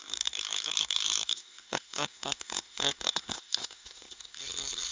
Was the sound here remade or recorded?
remade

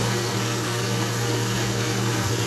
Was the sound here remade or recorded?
remade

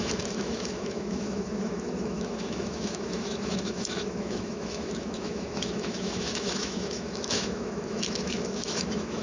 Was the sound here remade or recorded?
remade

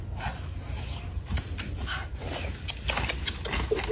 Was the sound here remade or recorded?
recorded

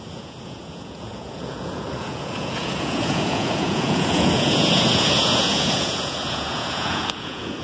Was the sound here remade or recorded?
remade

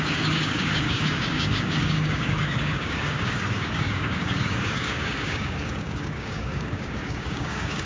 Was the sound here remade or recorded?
remade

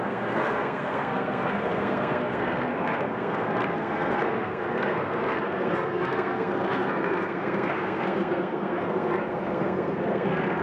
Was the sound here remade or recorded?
remade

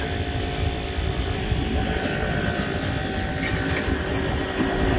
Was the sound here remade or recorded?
recorded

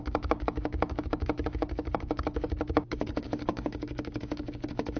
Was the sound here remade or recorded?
remade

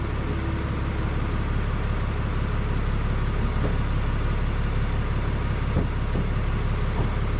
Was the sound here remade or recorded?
recorded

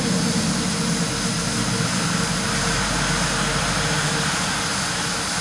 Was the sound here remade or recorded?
recorded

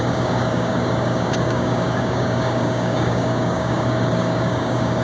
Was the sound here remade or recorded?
remade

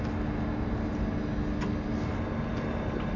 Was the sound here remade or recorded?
recorded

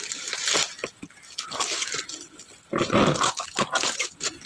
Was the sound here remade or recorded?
recorded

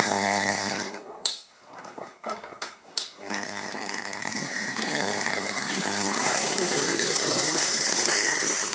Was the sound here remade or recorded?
remade